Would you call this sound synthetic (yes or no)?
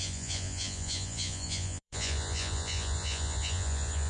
yes